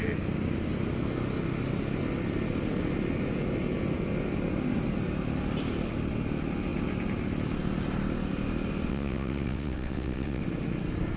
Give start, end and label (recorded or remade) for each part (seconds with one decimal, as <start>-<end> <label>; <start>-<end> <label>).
0.0-8.9 recorded; 8.9-10.4 remade; 10.4-11.2 recorded